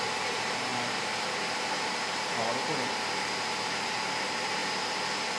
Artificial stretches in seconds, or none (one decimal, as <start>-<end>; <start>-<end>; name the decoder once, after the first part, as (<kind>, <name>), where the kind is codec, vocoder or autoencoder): 0.0-2.7 (vocoder, BigVGAN v2); 3.8-4.6